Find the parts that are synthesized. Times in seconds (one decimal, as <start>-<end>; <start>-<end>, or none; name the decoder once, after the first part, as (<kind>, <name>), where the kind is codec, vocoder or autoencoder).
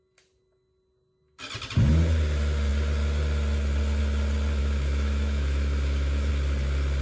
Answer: 4.6-6.3 (autoencoder, DAC-VAE)